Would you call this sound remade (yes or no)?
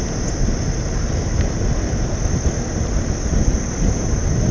no